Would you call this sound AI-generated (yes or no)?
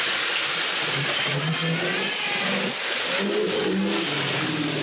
no